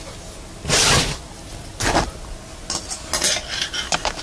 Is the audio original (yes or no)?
yes